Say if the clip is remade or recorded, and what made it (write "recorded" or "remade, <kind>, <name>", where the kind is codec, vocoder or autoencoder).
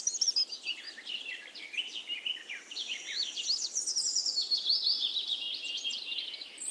recorded